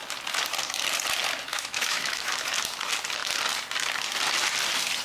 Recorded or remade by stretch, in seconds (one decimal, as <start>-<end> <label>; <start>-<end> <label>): 0.0-1.5 recorded; 1.5-2.3 remade; 2.3-5.0 recorded